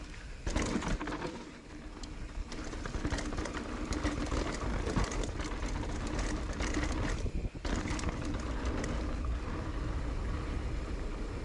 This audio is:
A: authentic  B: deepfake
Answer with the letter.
A